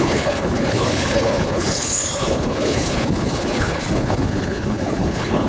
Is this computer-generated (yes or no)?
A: yes